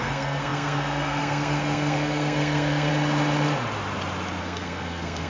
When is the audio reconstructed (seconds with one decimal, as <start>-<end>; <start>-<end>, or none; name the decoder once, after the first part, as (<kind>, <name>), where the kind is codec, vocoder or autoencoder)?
0.0-2.9 (codec, SNAC); 4.4-5.3